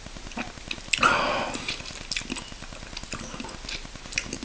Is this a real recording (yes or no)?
yes